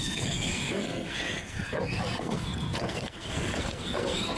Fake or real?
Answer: fake